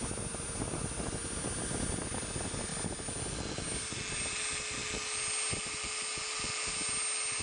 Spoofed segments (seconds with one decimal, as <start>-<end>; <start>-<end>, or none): none